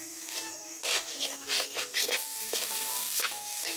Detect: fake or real fake